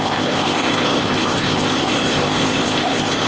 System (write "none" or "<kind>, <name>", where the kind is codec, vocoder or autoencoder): codec, ZipCodec